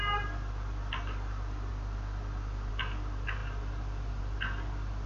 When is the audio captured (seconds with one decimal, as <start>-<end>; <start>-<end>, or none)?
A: 1.7-2.7